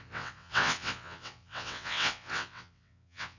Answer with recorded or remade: remade